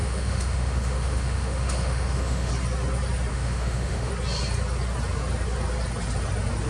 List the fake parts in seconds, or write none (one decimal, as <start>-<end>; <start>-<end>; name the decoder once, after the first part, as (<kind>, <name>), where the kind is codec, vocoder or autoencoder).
0.0-2.5 (autoencoder, DAC-VAE); 3.3-4.1